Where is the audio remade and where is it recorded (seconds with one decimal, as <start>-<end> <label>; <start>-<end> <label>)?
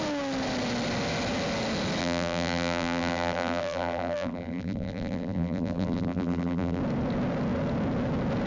0.0-2.0 recorded; 2.0-6.8 remade; 6.8-8.5 recorded